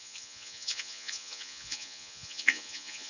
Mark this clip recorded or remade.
remade